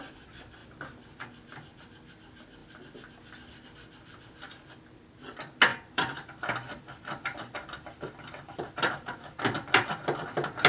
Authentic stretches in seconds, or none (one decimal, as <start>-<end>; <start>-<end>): 0.0-5.7; 9.4-10.7